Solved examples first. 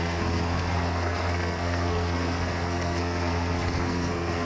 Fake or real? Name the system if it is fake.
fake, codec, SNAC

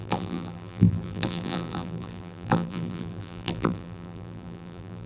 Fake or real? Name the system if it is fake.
fake, vocoder, BigVGAN v2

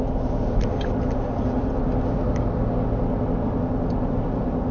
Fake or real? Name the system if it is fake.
real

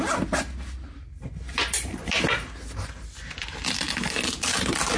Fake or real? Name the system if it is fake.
real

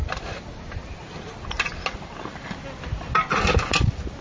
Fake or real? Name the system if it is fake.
real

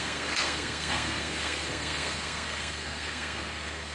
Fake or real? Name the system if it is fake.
fake, codec, SNAC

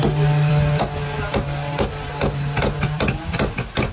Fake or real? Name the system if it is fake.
real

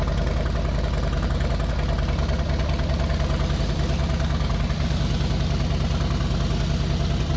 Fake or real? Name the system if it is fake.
real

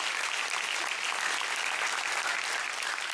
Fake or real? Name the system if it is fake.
real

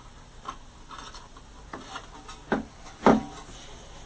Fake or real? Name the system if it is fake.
real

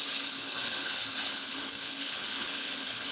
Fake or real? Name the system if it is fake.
fake, codec, HILCodec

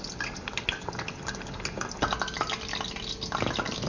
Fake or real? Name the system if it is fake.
real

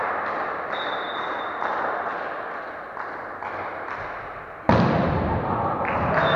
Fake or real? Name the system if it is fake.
real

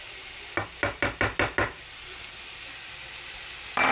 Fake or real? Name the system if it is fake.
real